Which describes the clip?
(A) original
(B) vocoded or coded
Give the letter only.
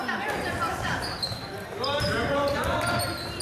A